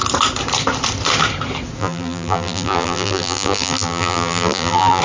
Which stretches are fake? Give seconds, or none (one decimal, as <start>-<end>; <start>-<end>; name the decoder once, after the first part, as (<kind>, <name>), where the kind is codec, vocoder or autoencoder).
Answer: 1.8-5.0 (vocoder, BigVGAN v2)